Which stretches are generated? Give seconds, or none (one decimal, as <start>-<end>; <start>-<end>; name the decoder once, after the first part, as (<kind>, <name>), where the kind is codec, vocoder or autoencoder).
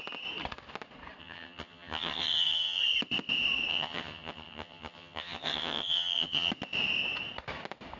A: 1.2-2.8 (vocoder, HiFi-GAN); 3.7-6.5